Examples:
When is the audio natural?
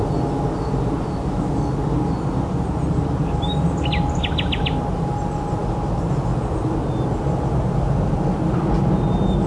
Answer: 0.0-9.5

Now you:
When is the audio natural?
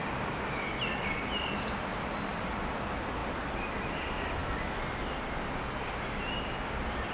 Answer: 0.0-1.9; 2.6-7.1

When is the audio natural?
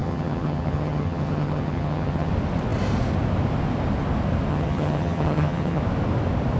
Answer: 2.3-4.5; 5.8-6.6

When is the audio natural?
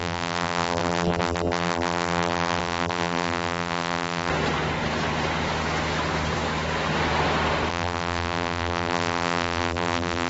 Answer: 4.3-7.7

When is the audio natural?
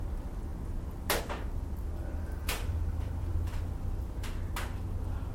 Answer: 0.0-2.4; 3.6-5.3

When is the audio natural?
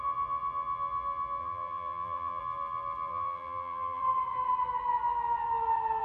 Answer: 0.0-1.4; 2.4-3.1; 4.0-6.0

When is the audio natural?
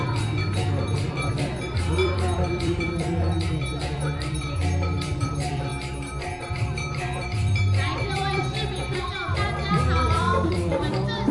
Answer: 5.7-6.4; 9.3-10.0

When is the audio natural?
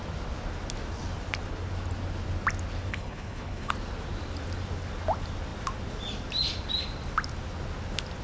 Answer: 0.0-2.9; 3.7-8.2